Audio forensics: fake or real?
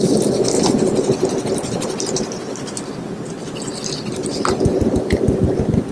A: real